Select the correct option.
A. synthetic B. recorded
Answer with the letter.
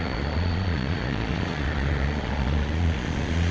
A